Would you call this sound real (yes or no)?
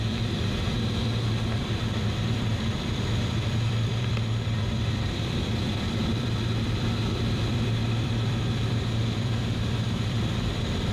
no